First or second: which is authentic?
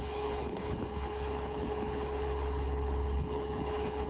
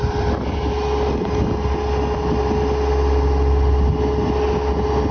second